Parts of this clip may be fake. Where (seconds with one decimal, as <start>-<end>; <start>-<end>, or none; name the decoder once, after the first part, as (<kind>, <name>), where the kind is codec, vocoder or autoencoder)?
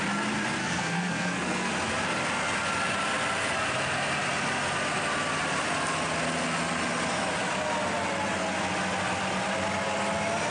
0.6-1.7 (codec, SNAC)